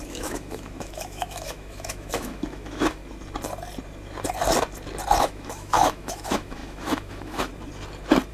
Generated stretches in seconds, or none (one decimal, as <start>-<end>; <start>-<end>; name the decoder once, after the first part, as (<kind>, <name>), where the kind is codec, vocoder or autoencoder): 0.0-3.0 (autoencoder, DAC-VAE); 5.2-7.5